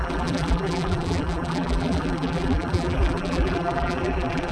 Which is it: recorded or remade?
remade